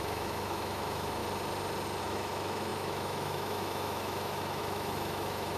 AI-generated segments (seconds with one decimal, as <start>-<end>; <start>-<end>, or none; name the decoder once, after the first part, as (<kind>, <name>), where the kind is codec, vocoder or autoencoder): 0.0-1.2 (autoencoder, DAC-VAE); 2.0-5.6